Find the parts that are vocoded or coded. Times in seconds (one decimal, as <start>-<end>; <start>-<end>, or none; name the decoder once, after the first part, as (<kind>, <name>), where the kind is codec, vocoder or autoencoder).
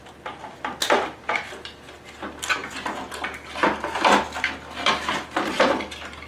none